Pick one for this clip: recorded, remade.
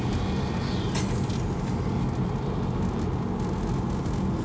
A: recorded